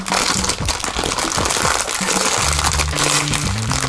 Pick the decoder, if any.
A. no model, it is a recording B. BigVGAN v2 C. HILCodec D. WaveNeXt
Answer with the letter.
A